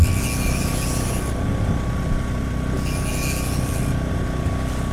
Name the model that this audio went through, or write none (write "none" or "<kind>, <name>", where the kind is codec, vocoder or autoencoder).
none